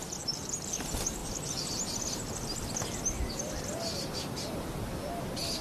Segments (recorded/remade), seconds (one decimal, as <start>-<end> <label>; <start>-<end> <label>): 0.0-5.6 recorded